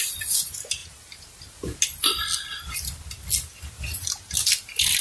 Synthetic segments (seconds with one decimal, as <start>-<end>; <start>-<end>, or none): none